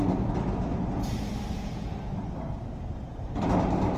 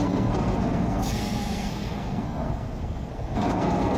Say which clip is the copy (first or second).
second